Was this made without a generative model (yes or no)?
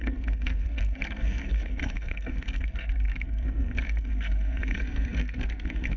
no